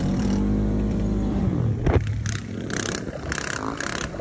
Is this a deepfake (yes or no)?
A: yes